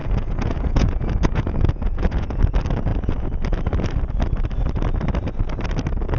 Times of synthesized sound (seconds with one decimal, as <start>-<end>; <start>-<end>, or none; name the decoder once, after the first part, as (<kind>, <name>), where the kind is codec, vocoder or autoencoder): 0.0-2.4 (vocoder, Vocos)